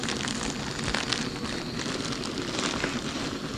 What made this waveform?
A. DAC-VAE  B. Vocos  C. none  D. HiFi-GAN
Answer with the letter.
C